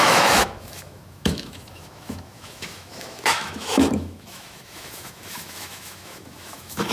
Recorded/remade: remade